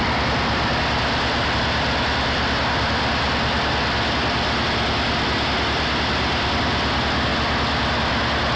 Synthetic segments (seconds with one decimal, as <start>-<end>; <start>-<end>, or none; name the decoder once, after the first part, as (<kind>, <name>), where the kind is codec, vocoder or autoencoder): none